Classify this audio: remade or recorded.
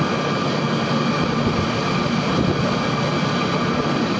recorded